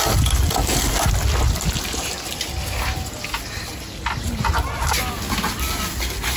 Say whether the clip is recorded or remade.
recorded